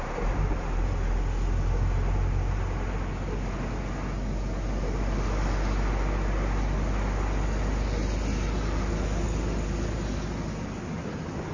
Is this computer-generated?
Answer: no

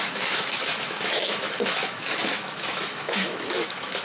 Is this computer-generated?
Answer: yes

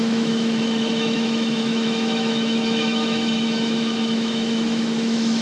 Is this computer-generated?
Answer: yes